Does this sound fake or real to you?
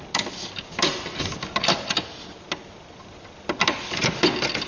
real